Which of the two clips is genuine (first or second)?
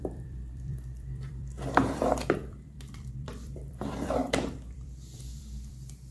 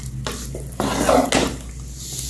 second